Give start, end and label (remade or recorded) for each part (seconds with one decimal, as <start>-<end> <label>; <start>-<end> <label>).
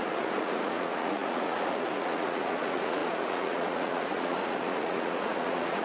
0.0-5.8 remade